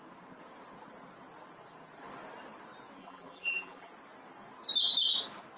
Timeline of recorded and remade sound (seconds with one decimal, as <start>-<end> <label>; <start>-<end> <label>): 0.0-3.0 recorded; 3.0-3.9 remade; 3.9-5.6 recorded